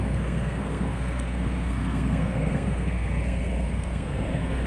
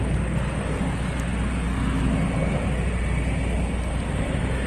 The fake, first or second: first